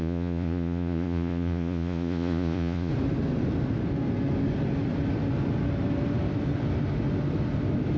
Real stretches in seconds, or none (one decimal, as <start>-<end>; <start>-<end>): 2.9-8.0